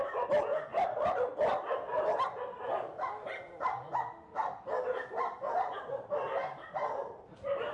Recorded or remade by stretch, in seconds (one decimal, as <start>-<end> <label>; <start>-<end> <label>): 0.0-7.7 recorded